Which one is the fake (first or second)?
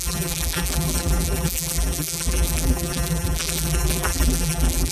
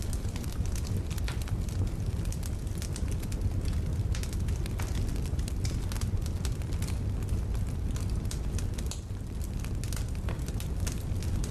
first